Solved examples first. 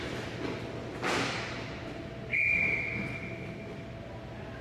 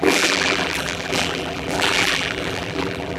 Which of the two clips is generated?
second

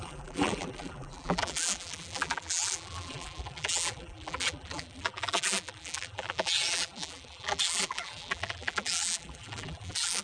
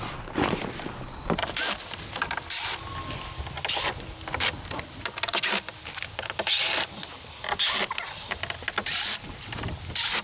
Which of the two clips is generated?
first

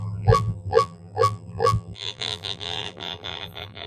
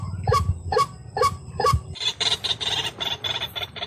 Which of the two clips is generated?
first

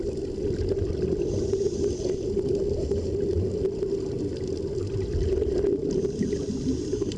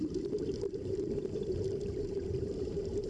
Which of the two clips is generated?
second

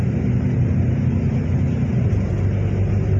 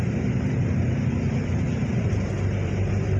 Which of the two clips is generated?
second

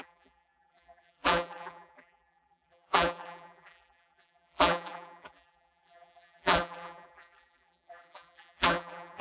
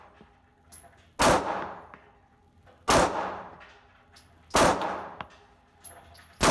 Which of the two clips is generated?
first